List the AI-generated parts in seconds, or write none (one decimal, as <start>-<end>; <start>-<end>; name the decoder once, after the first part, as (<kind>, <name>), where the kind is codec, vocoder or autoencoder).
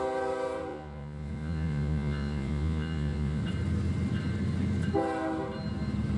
0.7-3.4 (vocoder, Vocos)